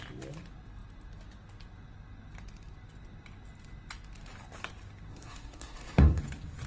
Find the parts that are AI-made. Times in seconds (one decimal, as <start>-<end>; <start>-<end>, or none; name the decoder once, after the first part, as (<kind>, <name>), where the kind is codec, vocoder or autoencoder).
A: 5.1-6.2 (codec, SNAC)